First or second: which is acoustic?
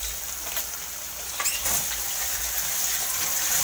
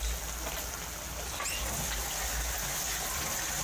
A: second